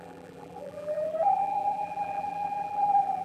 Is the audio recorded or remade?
remade